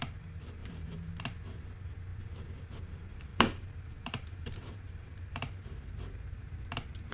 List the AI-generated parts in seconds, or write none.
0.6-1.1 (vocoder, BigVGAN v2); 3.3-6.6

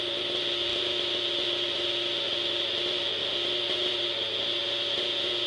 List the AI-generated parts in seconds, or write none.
none

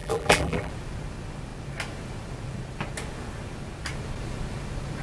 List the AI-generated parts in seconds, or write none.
0.0-0.7 (vocoder, BigVGAN v2)

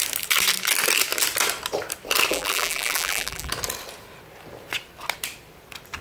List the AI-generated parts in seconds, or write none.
2.3-3.5 (vocoder, BigVGAN v2)

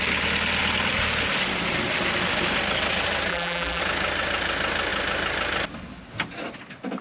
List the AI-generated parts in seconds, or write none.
3.3-3.8 (vocoder, BigVGAN v2)

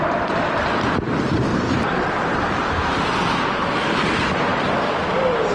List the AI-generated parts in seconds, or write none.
1.5-3.2 (vocoder, BigVGAN v2); 4.5-5.1